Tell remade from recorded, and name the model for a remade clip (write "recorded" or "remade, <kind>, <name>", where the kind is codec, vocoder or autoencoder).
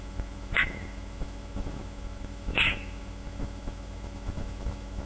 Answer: remade, autoencoder, DAC-VAE